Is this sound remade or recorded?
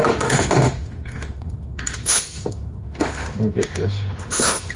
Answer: remade